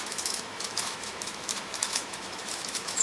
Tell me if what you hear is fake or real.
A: fake